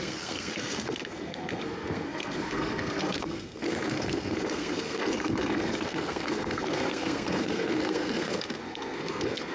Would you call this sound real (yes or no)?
no